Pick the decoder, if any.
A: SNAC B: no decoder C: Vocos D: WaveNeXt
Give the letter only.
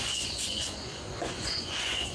C